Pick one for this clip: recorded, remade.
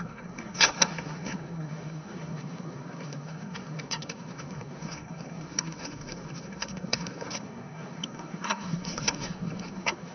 remade